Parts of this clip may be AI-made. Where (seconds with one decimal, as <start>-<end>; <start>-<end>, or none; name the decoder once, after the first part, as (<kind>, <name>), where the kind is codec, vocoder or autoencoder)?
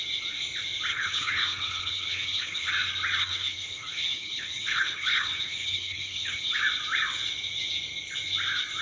0.9-2.7 (codec, HILCodec); 3.2-6.6